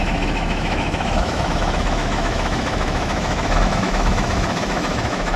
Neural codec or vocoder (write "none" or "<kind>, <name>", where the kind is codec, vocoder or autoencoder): autoencoder, DAC-VAE